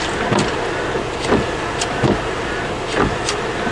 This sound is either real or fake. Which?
real